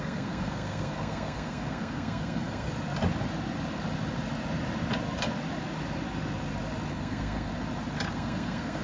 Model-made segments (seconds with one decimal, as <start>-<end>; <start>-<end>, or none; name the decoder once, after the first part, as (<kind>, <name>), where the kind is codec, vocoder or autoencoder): 0.0-2.7 (codec, SNAC); 6.9-7.5; 8.1-8.8